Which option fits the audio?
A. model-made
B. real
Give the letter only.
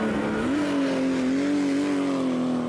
B